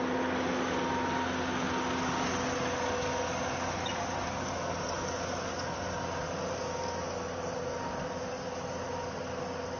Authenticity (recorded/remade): recorded